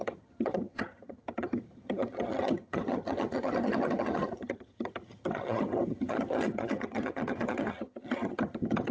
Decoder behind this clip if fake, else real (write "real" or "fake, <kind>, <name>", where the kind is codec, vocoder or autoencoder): fake, vocoder, HiFi-GAN